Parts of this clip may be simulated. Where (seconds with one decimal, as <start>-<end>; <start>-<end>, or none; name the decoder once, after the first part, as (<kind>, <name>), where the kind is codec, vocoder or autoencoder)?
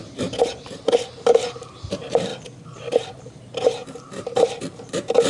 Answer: 0.0-2.3 (vocoder, BigVGAN v2); 3.2-5.3